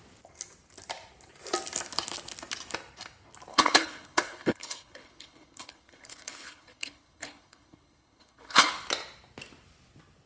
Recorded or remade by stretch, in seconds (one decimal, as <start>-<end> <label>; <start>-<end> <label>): 0.0-3.5 recorded; 3.5-8.7 remade; 8.7-10.3 recorded